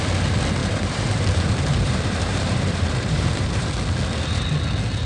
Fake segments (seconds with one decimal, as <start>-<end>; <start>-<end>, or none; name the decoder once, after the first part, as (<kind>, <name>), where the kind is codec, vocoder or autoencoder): 0.6-3.7 (vocoder, BigVGAN v2)